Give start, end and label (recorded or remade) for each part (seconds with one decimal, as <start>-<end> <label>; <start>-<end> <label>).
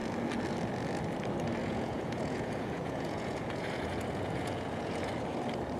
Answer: 0.0-1.6 recorded; 1.6-5.1 remade; 5.1-5.8 recorded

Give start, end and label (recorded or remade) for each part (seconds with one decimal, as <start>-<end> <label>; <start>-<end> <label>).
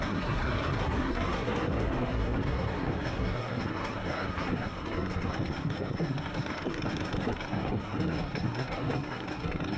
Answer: 0.0-9.8 remade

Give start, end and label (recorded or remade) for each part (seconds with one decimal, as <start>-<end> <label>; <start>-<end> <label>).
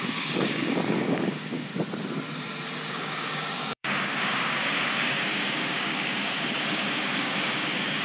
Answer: 0.0-1.7 remade; 1.7-2.9 recorded; 2.9-8.0 remade